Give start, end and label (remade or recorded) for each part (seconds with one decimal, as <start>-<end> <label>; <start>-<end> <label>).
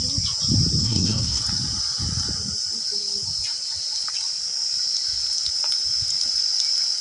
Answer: 0.0-0.8 recorded; 0.8-1.4 remade; 1.4-7.0 recorded